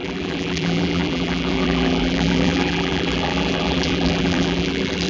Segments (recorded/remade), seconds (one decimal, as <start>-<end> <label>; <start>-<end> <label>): 0.0-5.1 remade